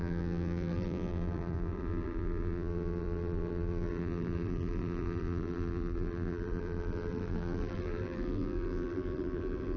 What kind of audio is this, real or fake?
fake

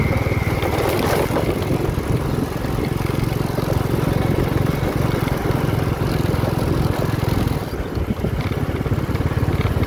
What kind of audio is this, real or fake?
real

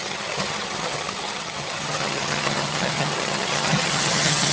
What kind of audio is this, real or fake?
fake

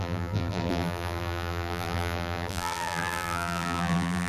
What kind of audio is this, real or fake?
fake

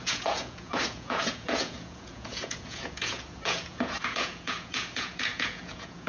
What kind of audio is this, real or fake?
fake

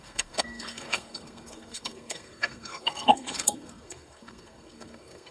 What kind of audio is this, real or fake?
fake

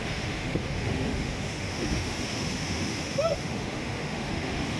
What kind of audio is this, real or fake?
fake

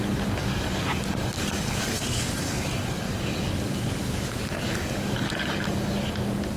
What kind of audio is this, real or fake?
fake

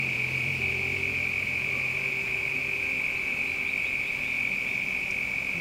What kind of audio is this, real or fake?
fake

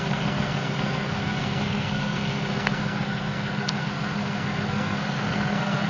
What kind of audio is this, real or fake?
fake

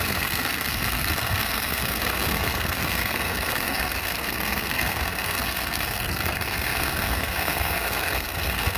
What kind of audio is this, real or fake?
fake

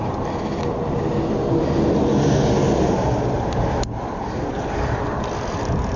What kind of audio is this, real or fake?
real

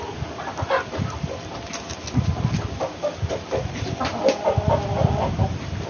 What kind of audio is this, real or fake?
real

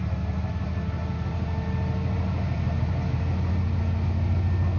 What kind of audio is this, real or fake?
real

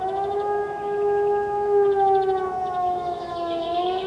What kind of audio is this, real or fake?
fake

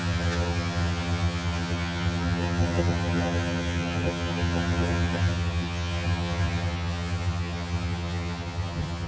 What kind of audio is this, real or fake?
fake